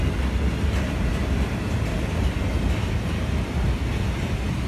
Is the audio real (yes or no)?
yes